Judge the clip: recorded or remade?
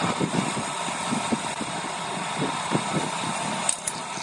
remade